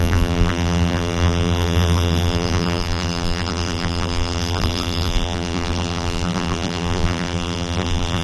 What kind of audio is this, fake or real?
fake